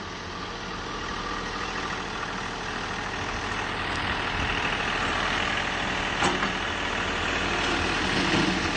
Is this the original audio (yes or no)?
yes